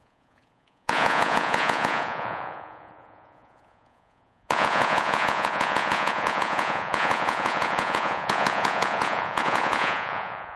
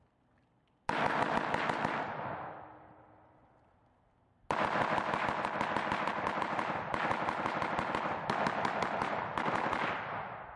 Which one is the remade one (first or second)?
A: first